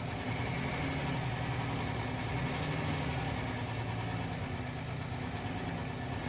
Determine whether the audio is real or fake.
real